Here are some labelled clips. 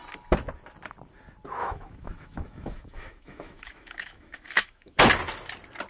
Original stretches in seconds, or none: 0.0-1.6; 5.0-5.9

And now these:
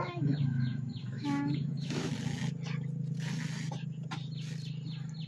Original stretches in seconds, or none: 2.1-5.3

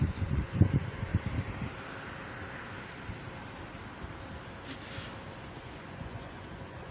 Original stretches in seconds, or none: 1.1-5.2

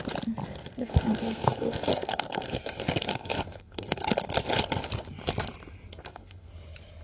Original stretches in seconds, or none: 0.0-0.4; 4.1-6.0; 6.5-7.0

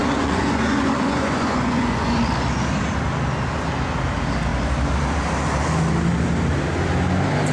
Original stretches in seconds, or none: 2.2-7.5